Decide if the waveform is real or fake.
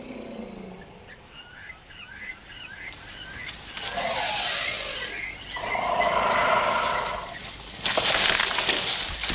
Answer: real